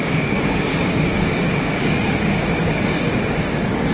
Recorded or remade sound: remade